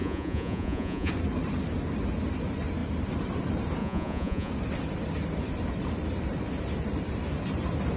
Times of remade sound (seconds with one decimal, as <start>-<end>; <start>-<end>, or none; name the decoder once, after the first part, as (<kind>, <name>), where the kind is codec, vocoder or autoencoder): 0.0-1.1 (vocoder, Vocos); 3.8-4.5